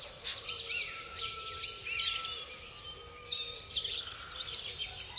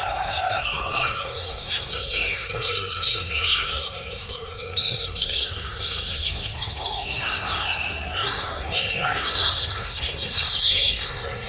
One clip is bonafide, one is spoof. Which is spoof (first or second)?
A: second